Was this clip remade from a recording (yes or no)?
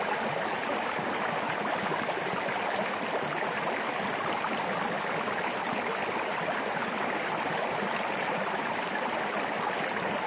no